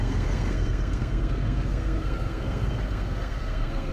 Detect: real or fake fake